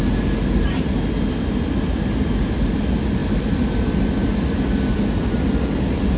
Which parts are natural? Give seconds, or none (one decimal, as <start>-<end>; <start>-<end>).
0.0-6.2